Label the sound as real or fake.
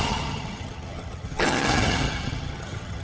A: fake